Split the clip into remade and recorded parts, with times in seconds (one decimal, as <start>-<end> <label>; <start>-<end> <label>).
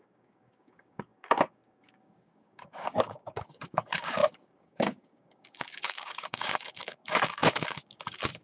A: 0.0-8.4 remade